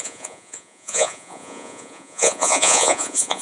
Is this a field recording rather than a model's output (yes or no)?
no